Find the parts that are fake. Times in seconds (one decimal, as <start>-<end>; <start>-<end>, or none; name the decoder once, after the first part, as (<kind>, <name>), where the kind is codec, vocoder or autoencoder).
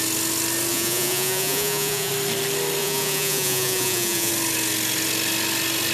0.7-2.1 (vocoder, Vocos); 2.8-4.3